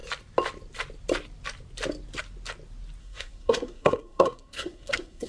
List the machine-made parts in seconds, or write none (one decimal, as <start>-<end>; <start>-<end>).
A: 3.0-5.3

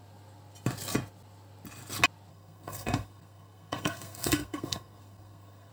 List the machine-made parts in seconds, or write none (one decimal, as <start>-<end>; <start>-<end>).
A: 2.3-5.7

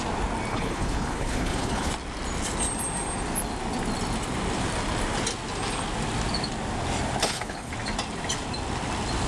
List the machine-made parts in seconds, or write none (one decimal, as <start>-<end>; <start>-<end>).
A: 0.5-1.9; 7.2-7.7

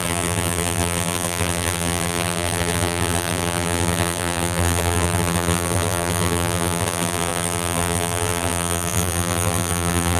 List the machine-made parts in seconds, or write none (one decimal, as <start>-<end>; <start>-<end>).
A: 0.0-10.2

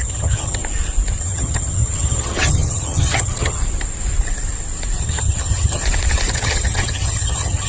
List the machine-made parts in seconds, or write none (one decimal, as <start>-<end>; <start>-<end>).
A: 0.0-0.6; 1.2-3.6; 5.0-5.8; 6.3-7.7

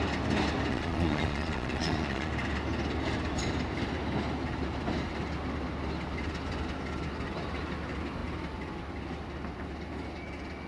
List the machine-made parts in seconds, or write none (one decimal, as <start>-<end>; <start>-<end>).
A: 0.7-2.3